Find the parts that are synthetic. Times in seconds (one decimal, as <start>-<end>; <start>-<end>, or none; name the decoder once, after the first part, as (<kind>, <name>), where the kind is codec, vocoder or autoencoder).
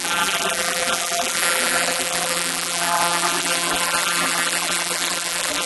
0.0-5.7 (vocoder, BigVGAN v2)